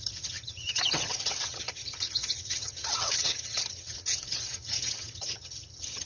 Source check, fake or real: fake